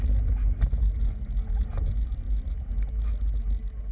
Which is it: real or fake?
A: real